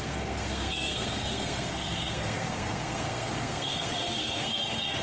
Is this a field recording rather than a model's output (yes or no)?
no